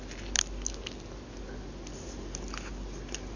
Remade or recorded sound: recorded